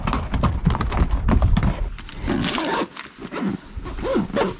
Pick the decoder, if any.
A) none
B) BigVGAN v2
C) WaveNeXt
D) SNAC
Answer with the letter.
A